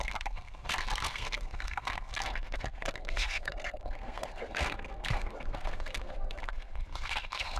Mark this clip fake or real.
fake